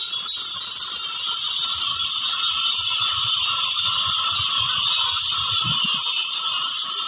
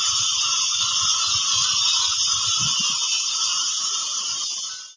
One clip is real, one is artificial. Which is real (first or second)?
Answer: second